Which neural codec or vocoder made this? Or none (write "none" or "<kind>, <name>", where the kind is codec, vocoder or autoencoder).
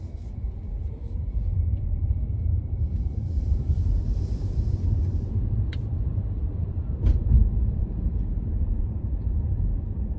vocoder, BigVGAN v2